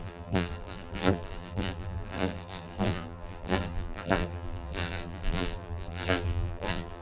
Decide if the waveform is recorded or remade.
remade